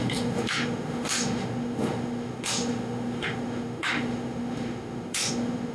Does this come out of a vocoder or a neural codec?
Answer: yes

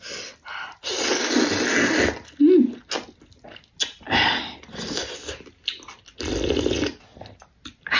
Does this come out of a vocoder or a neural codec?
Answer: no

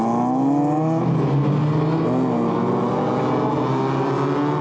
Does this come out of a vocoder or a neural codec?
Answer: no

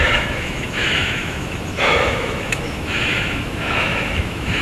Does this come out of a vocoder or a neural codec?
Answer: yes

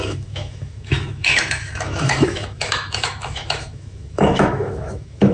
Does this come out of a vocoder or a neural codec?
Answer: yes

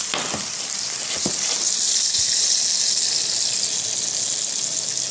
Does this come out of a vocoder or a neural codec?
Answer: no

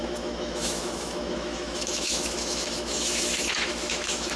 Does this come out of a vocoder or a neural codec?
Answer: yes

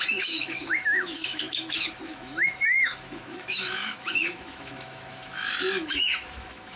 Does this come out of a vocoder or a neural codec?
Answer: yes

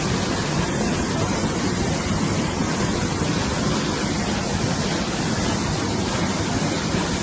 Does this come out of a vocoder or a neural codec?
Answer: no